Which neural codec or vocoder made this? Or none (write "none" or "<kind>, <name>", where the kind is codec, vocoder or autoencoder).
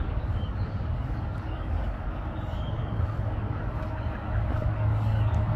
codec, DAC